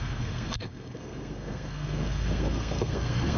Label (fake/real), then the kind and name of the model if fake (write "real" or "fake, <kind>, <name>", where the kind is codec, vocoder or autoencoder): fake, codec, SNAC